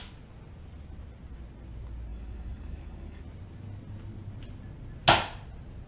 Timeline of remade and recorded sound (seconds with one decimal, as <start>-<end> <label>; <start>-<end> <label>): 0.0-2.1 recorded; 2.1-3.2 remade; 3.2-5.9 recorded